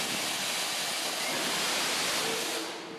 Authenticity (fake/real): real